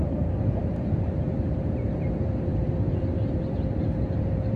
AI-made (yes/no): yes